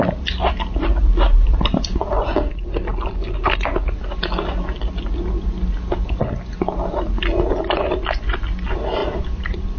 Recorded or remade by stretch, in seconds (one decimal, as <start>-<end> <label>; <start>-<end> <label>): 0.0-1.0 recorded; 1.0-1.9 remade; 1.9-9.0 recorded; 9.0-9.8 remade